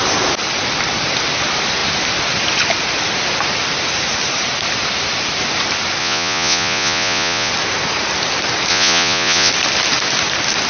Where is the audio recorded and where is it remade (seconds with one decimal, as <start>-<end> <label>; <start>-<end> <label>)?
0.0-6.0 recorded; 6.0-7.5 remade; 7.5-8.7 recorded; 8.7-9.5 remade; 9.5-10.7 recorded